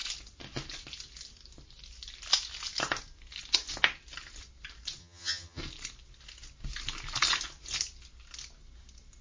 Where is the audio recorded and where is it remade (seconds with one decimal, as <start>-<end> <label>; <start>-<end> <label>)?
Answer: 0.0-5.0 recorded; 5.0-5.6 remade; 5.6-9.2 recorded